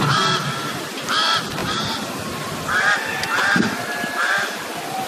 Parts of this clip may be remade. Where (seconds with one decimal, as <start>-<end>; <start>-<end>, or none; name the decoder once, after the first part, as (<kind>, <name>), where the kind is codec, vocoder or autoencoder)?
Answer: 0.5-5.1 (vocoder, BigVGAN v2)